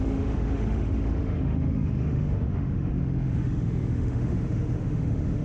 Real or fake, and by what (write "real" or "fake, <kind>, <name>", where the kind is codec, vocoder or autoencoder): fake, autoencoder, DAC-VAE